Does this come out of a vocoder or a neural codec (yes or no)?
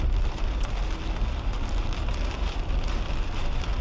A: no